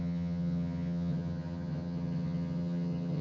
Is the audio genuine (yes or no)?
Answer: no